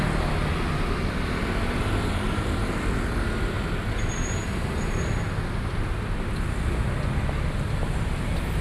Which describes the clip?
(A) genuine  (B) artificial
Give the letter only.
A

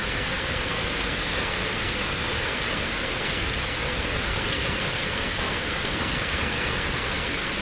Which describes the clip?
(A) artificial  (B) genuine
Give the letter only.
A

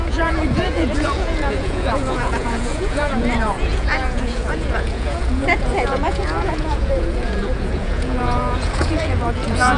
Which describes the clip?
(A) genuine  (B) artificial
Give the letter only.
B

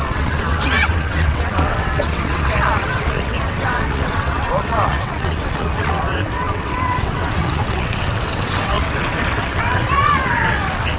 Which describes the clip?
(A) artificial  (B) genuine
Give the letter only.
A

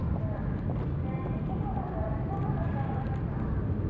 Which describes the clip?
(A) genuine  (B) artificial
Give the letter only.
A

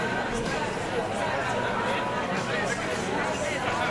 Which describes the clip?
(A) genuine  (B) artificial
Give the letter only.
A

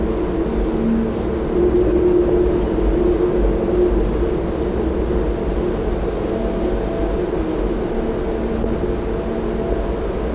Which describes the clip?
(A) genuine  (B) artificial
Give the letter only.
A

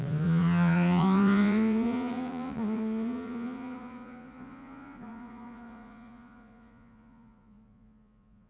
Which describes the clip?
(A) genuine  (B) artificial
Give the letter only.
B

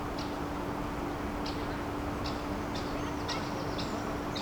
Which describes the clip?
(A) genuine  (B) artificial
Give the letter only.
A